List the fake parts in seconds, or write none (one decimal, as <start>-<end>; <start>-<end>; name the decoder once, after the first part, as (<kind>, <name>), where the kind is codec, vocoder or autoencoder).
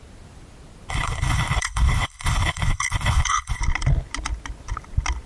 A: 0.9-3.6 (codec, HILCodec)